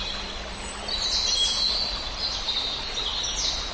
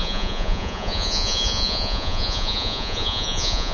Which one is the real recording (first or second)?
first